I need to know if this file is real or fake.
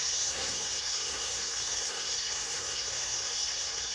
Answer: fake